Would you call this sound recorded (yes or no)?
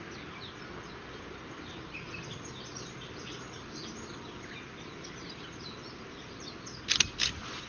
yes